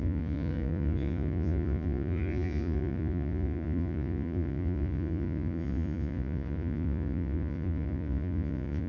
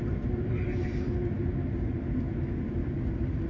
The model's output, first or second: first